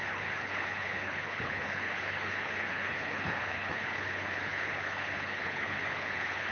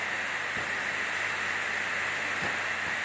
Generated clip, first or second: first